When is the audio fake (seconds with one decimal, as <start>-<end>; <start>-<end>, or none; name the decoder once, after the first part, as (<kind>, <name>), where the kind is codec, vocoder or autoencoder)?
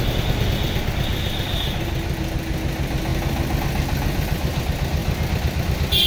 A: none